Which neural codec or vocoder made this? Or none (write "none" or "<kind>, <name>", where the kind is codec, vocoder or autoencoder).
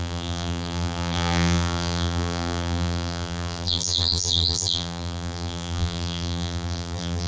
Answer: vocoder, BigVGAN v2